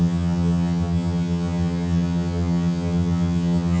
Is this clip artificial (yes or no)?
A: yes